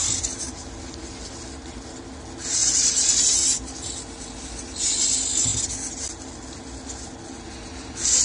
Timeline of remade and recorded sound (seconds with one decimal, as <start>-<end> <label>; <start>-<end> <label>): 0.0-8.2 recorded